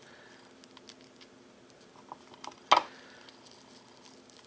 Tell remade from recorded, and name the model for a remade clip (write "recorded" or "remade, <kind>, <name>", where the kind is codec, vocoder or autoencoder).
recorded